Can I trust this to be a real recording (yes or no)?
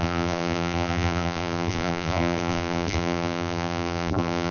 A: no